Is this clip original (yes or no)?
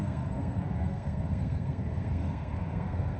no